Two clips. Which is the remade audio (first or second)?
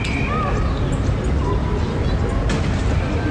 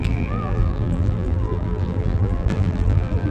second